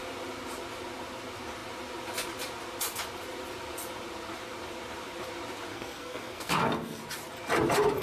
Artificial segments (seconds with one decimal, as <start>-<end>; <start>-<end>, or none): 5.7-7.0